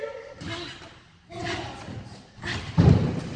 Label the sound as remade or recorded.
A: recorded